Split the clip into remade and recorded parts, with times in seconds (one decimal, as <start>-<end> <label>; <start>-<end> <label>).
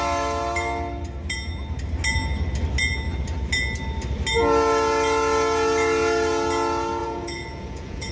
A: 0.0-7.0 recorded; 7.0-8.1 remade